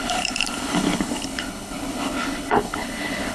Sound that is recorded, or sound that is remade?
remade